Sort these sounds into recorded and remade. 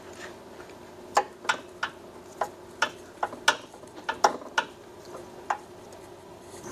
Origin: recorded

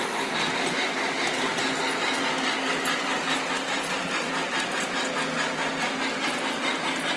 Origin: recorded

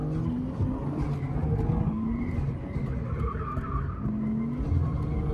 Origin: recorded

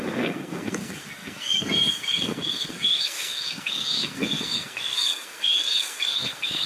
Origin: remade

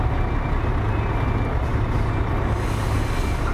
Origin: recorded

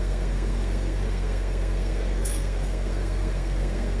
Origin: remade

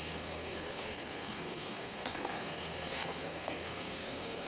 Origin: remade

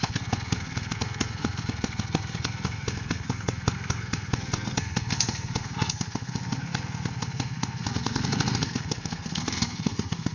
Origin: remade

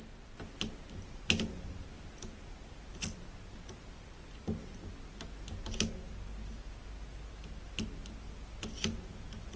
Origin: recorded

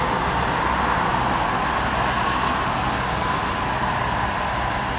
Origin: recorded